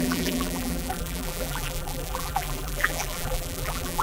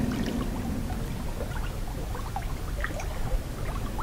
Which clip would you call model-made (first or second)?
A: first